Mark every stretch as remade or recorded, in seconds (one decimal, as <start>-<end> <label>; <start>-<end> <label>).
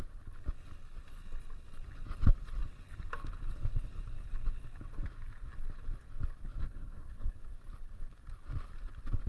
0.0-6.6 recorded; 6.6-7.3 remade; 7.3-9.3 recorded